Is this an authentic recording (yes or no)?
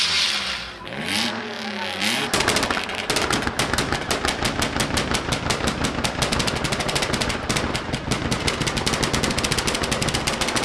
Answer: yes